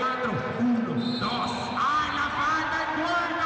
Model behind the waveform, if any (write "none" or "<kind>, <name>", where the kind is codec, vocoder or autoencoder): none